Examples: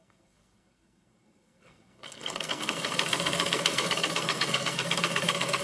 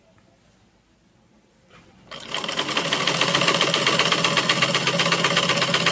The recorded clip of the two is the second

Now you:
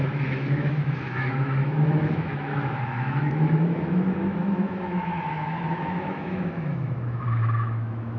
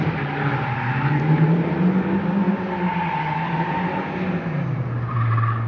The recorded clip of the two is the second